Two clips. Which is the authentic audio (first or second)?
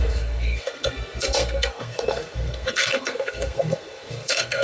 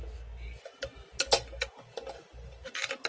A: second